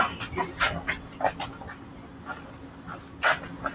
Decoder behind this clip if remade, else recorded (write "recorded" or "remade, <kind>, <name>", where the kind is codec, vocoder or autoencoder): recorded